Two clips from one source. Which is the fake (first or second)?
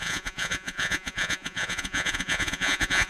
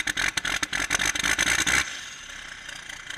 first